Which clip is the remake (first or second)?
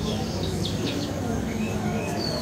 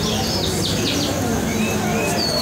first